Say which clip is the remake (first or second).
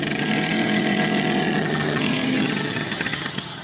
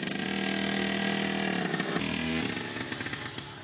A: first